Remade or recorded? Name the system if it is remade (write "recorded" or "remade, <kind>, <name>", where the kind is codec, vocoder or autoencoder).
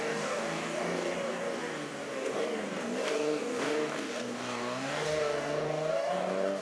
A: remade, codec, DAC